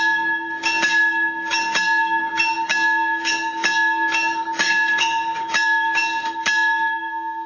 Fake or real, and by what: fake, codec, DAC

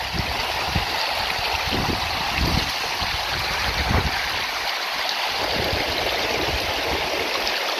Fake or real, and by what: real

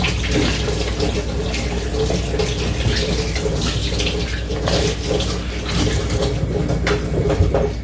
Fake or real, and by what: real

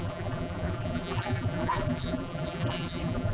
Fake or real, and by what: fake, vocoder, BigVGAN v2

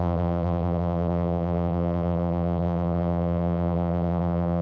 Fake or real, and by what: fake, vocoder, BigVGAN v2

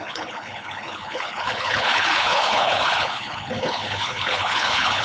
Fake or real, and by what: fake, codec, HILCodec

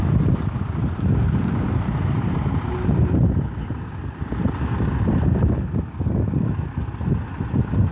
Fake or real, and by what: real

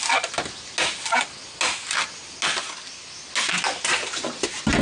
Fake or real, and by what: real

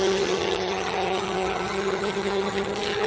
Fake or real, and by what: fake, vocoder, HiFi-GAN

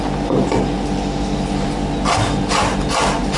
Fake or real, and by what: real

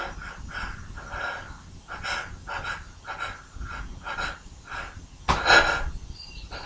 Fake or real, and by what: real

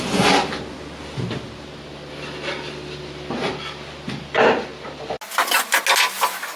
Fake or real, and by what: real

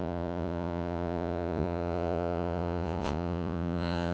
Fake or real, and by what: fake, vocoder, Vocos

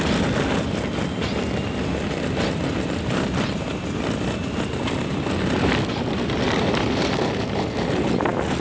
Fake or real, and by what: real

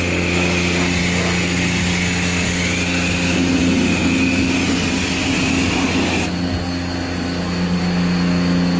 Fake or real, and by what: real